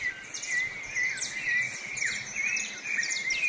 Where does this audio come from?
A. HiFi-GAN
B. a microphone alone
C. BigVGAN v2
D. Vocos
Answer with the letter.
B